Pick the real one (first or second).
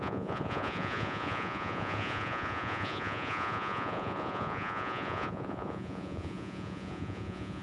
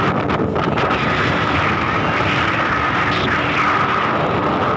second